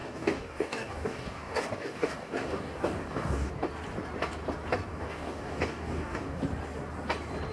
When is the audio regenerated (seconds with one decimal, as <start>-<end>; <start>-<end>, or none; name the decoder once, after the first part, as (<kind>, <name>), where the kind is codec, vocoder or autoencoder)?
0.0-3.5 (codec, DAC); 4.9-6.4